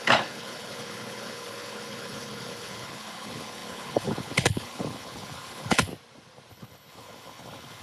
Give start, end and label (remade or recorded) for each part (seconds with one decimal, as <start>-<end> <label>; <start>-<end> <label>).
0.0-5.9 remade; 5.9-6.5 recorded; 6.5-7.8 remade

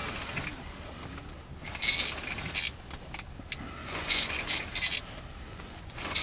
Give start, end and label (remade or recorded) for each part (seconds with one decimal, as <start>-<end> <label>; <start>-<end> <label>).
0.0-3.8 recorded; 3.8-4.6 remade; 4.6-5.5 recorded; 5.5-6.2 remade